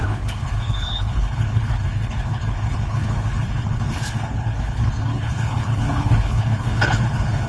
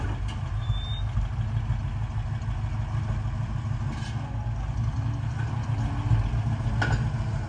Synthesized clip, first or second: first